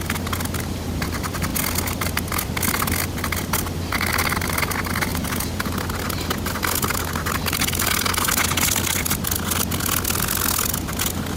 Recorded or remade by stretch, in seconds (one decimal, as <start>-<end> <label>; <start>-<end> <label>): 0.0-5.1 recorded; 5.1-5.7 remade; 5.7-11.4 recorded